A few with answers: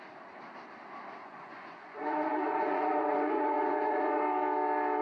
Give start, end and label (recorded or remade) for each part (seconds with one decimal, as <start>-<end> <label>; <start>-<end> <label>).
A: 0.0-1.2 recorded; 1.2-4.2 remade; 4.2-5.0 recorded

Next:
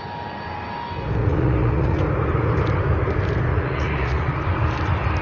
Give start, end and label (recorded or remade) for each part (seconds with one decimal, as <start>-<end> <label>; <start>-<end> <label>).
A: 0.0-1.2 recorded; 1.2-2.0 remade; 2.0-3.5 recorded; 3.5-4.5 remade; 4.5-5.2 recorded

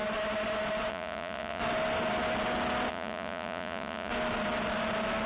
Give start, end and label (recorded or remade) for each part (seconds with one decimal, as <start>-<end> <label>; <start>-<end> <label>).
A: 0.0-0.9 recorded; 0.9-1.6 remade; 1.6-2.9 recorded; 2.9-4.1 remade; 4.1-5.3 recorded

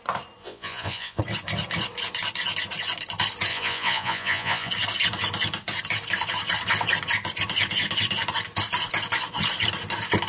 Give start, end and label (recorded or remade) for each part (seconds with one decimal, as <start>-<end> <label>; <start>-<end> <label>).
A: 0.0-0.4 recorded; 0.4-1.2 remade; 1.2-3.5 recorded; 3.5-4.7 remade; 4.7-10.3 recorded

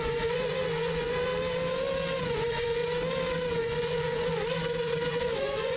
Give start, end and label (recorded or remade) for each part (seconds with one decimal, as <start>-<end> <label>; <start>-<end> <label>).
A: 0.0-1.3 remade; 1.3-2.2 recorded; 2.2-2.8 remade; 2.8-3.5 recorded; 3.5-5.8 remade